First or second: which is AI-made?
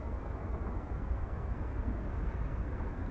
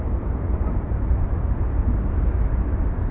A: first